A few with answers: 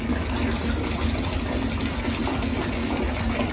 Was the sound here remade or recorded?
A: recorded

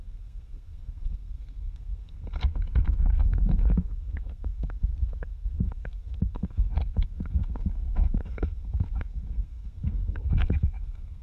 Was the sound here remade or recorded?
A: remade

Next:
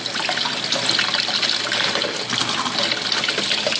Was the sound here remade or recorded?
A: recorded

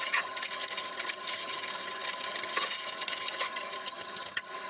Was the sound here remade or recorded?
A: remade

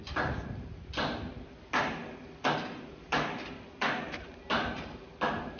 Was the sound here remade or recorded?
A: recorded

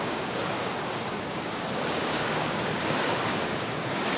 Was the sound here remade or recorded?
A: remade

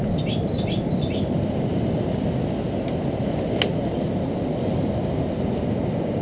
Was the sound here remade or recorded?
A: recorded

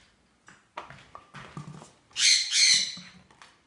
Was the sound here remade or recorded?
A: recorded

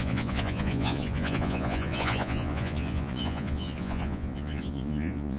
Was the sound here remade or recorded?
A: remade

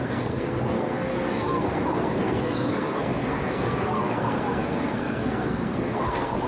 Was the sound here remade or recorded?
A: remade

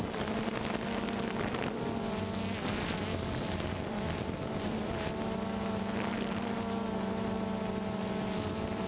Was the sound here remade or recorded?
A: recorded